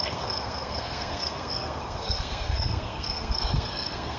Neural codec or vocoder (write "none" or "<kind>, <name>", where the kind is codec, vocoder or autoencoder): codec, SNAC